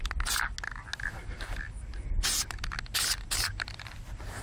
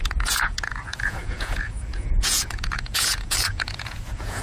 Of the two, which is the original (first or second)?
first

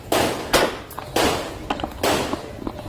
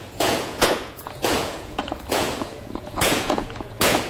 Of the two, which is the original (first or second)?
first